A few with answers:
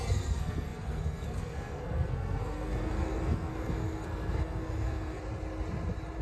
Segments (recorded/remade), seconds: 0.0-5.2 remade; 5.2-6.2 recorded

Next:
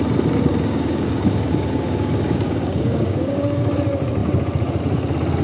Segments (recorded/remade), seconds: 0.0-0.5 recorded; 0.5-3.7 remade; 3.7-5.4 recorded